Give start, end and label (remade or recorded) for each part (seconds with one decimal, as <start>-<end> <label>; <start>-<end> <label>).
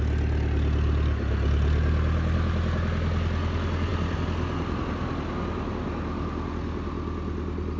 0.0-7.8 recorded